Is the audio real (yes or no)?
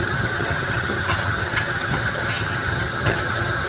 no